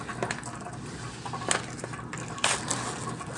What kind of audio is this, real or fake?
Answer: real